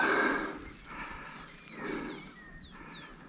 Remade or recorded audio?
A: recorded